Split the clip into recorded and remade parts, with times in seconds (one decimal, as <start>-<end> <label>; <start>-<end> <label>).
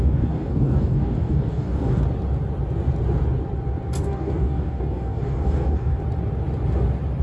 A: 0.0-2.0 remade; 2.0-4.0 recorded; 4.0-6.0 remade; 6.0-7.2 recorded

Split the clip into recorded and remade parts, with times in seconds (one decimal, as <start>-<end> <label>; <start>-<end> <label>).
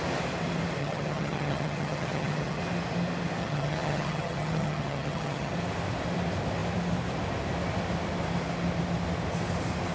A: 0.0-0.8 recorded; 0.8-2.6 remade; 2.6-3.4 recorded; 3.4-5.5 remade; 5.5-9.9 recorded